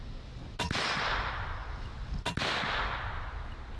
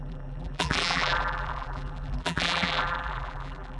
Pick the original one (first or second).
first